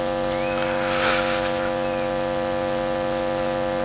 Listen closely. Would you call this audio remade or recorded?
recorded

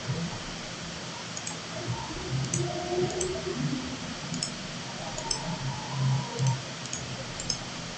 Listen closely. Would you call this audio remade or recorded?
recorded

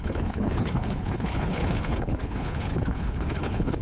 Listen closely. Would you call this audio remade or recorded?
remade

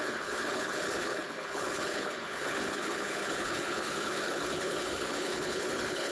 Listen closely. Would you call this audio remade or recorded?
remade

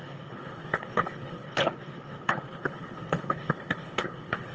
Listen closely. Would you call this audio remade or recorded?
remade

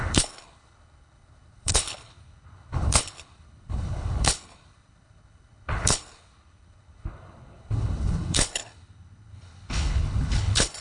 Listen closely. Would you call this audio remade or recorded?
remade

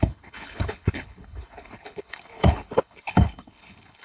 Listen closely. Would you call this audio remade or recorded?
remade